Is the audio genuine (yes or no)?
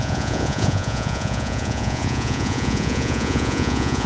no